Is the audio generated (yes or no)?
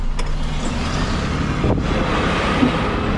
no